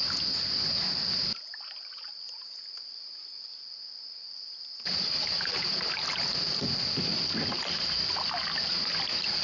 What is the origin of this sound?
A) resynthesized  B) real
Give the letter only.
B